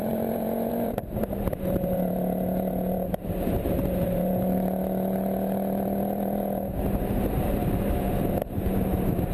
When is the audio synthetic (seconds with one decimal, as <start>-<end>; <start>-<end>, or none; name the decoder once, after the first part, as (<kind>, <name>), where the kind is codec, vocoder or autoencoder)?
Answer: 0.0-7.6 (vocoder, BigVGAN v2); 8.4-9.3